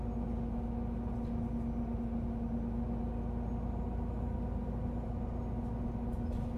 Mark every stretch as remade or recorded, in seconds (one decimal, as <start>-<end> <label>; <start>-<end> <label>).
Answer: 0.0-6.6 recorded